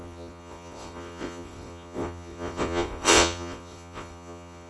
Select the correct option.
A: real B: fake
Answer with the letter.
B